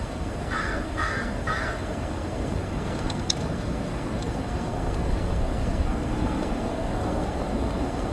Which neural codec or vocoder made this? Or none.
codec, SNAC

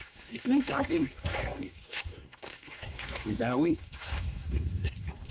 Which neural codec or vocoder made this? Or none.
codec, SNAC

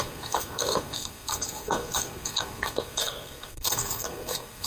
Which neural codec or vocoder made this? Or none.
codec, SNAC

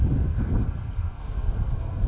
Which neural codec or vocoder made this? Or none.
codec, SNAC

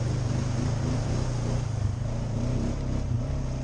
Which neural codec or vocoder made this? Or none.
none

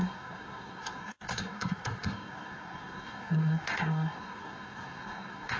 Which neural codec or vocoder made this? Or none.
codec, SNAC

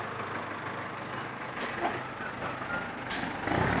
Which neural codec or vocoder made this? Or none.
none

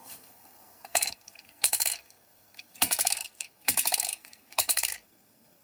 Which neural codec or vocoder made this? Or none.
codec, SNAC